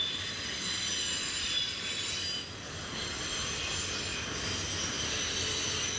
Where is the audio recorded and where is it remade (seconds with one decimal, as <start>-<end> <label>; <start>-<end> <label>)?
0.0-6.0 recorded